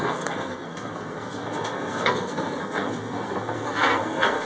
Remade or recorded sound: remade